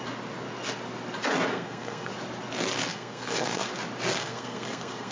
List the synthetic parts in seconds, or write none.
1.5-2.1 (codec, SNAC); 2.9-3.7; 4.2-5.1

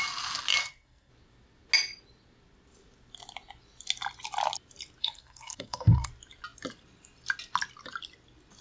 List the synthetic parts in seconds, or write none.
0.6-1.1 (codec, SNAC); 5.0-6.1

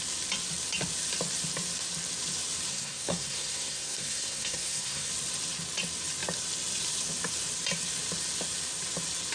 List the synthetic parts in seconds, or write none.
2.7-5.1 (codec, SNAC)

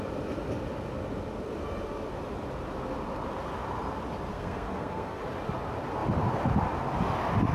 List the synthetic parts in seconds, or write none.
4.3-5.2 (codec, SNAC)